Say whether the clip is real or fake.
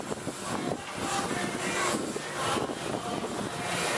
real